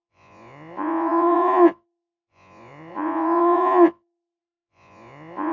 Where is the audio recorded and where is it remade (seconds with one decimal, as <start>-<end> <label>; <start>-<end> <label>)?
0.0-5.5 remade